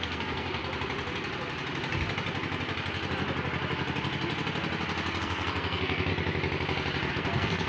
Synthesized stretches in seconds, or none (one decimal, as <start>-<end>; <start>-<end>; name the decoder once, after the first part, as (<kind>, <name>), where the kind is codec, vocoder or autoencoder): 0.0-0.6 (codec, SNAC); 5.2-6.1; 7.1-7.7